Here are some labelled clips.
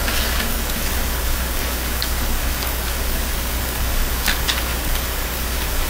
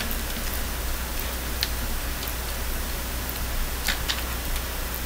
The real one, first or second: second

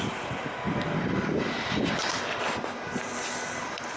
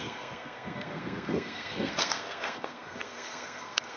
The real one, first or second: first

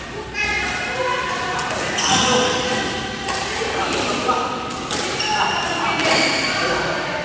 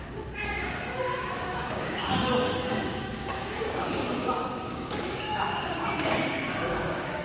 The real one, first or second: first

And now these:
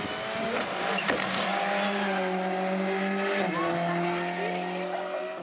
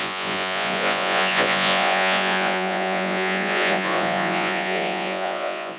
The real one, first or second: first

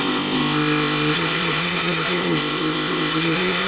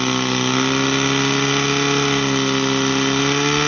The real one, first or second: second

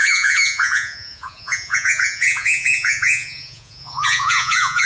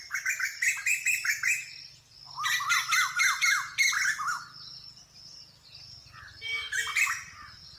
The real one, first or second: second